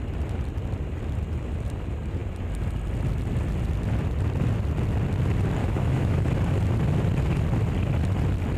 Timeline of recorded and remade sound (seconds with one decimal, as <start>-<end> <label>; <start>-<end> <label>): 0.0-5.6 recorded; 5.6-6.3 remade; 6.3-8.6 recorded